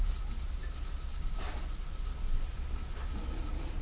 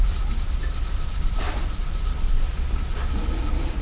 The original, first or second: first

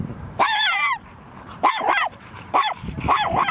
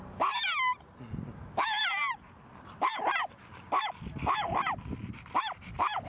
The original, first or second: second